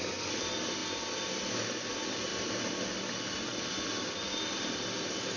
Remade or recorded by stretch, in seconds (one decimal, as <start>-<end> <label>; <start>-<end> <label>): 0.0-5.4 recorded